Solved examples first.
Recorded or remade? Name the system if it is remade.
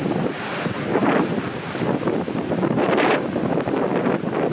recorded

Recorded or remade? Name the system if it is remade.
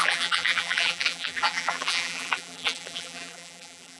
remade, vocoder, BigVGAN v2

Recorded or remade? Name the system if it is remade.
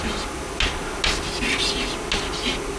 recorded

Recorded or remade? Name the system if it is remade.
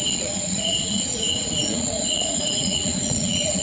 remade, vocoder, Vocos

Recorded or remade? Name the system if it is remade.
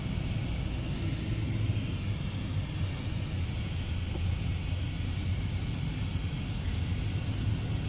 recorded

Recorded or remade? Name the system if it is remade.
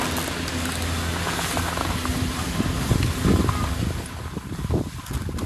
recorded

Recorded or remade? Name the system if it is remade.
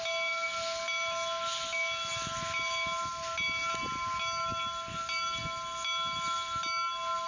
recorded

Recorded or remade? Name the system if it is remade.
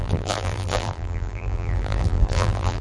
remade, vocoder, BigVGAN v2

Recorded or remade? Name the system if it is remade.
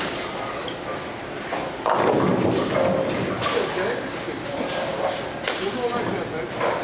recorded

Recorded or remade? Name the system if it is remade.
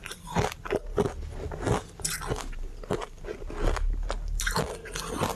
recorded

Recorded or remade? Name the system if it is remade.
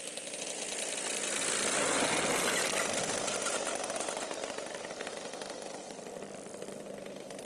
recorded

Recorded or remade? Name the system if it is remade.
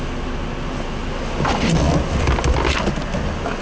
recorded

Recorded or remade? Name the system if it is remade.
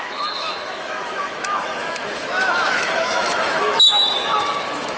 remade, autoencoder, DAC-VAE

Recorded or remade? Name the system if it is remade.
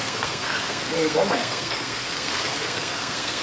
remade, codec, SNAC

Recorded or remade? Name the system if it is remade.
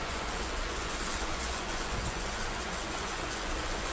remade, vocoder, Vocos